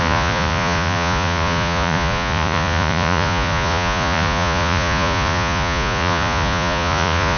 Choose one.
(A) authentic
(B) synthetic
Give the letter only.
B